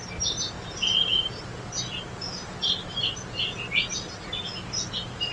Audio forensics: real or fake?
real